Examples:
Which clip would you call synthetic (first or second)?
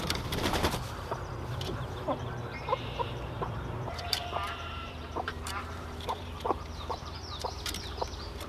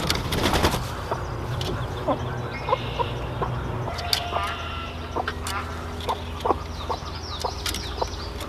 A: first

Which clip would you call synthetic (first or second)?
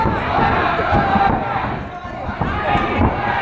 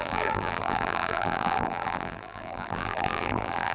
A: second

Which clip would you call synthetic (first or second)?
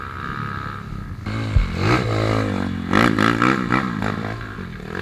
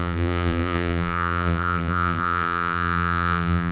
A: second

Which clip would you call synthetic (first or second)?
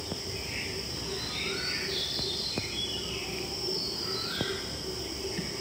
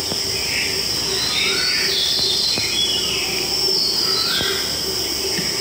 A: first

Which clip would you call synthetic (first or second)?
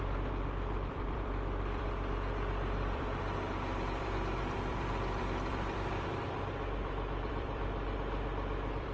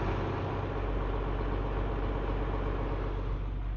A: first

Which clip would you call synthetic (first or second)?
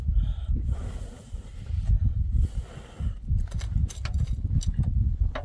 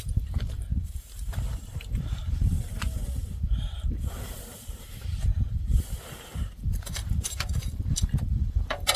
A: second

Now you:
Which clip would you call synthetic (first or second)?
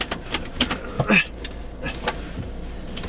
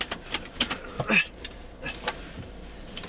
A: second